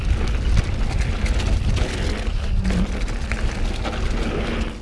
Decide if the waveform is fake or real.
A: real